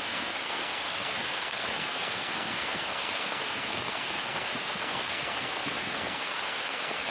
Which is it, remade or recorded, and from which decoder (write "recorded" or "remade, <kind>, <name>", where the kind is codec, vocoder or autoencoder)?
remade, codec, SNAC